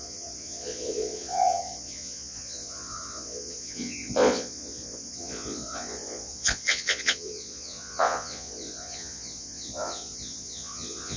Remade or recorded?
remade